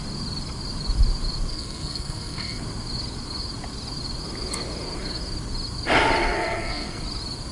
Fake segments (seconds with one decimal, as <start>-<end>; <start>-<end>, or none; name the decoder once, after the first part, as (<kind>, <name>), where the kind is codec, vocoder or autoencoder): 1.5-2.6 (codec, SNAC); 6.2-7.0